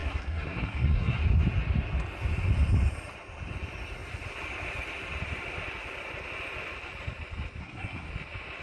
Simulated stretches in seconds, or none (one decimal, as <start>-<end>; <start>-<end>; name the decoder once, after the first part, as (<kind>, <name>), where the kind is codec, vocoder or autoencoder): 0.0-1.2 (codec, SNAC); 7.6-8.1